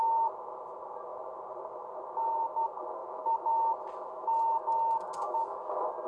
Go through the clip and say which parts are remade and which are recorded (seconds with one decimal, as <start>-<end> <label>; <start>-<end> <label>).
0.0-3.0 recorded; 3.0-3.7 remade; 3.7-6.1 recorded